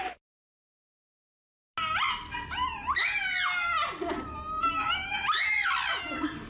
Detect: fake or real real